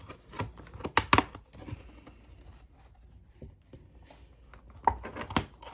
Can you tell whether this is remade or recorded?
recorded